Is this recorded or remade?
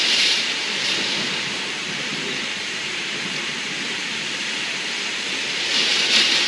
remade